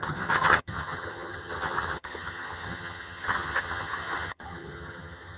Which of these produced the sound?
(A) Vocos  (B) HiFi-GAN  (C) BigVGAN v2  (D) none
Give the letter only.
B